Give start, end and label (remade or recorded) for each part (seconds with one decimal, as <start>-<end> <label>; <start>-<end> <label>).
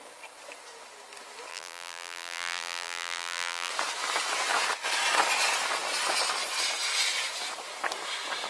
0.0-1.5 recorded; 1.5-3.7 remade; 3.7-8.5 recorded